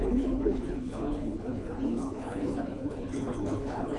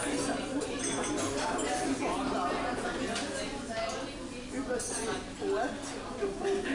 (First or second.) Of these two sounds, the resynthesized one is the first